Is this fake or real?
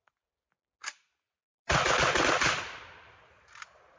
real